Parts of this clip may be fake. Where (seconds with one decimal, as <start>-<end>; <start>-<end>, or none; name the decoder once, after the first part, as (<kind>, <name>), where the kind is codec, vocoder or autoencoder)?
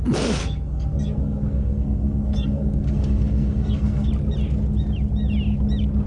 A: 0.4-4.1 (codec, SNAC)